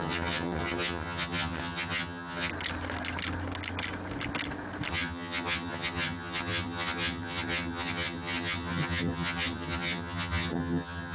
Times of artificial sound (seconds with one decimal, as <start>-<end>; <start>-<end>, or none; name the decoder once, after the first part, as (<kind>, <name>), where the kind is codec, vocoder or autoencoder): 0.0-2.5 (vocoder, HiFi-GAN); 4.9-11.1